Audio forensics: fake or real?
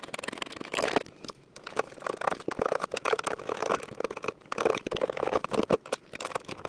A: fake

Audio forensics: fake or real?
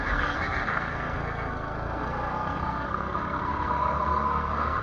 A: fake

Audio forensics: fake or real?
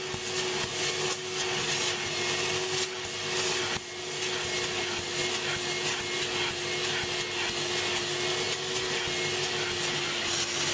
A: real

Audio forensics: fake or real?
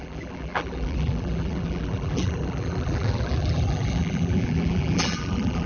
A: fake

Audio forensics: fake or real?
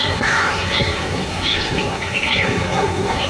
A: fake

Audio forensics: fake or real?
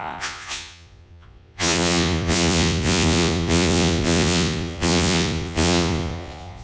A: fake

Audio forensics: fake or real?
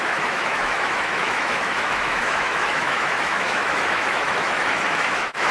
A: fake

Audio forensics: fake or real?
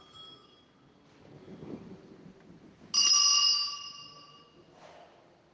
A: real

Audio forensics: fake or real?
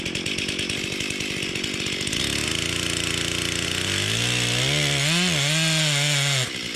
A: real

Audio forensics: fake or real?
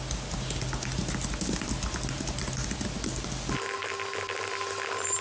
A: real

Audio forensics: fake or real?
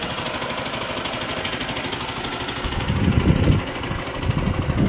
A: real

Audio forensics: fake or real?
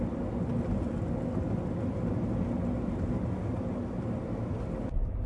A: real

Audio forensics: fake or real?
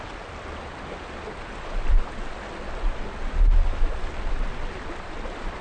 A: real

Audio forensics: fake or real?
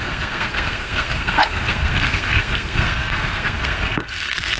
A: fake